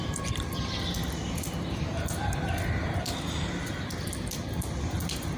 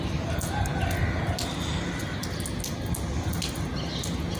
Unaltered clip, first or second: second